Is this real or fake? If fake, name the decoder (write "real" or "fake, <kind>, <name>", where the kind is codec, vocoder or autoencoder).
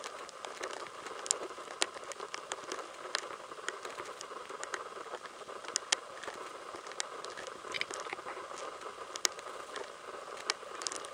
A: real